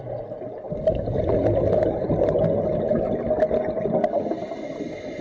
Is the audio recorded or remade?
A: recorded